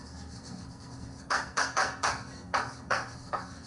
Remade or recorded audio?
remade